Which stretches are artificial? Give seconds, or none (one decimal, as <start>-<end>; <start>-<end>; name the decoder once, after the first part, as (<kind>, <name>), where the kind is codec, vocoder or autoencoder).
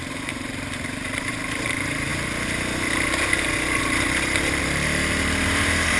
0.0-2.1 (vocoder, BigVGAN v2); 4.6-6.0